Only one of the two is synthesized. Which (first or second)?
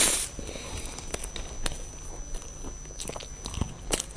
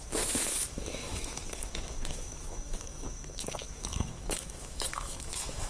second